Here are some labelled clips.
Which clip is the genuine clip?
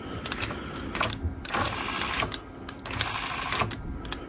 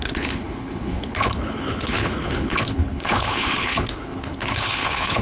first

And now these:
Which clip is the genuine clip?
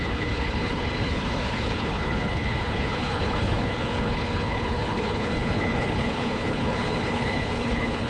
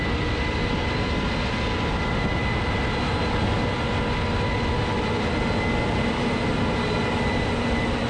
second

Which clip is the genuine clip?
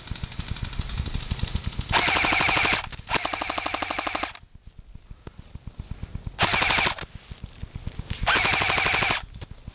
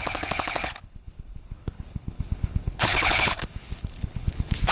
first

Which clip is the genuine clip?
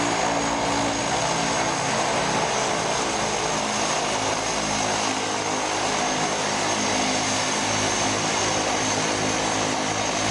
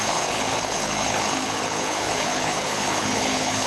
first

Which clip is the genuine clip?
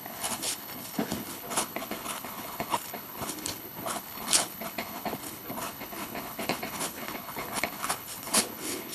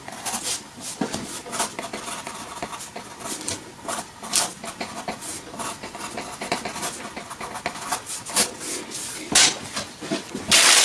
second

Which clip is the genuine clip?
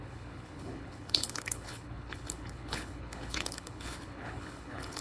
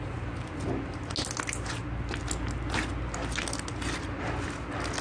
second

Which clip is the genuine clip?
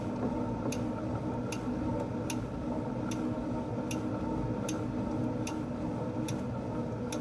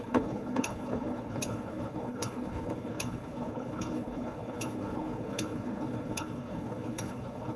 first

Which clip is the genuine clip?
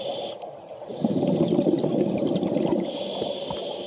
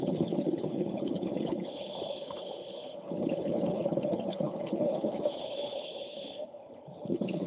first